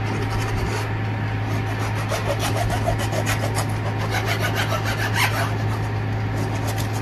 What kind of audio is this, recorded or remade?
recorded